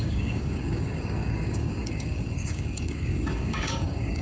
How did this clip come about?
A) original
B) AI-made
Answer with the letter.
B